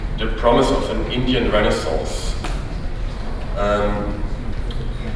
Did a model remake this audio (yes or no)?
no